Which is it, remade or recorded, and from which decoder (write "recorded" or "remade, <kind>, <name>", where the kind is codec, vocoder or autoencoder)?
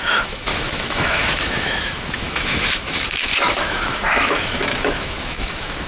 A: remade, autoencoder, DAC-VAE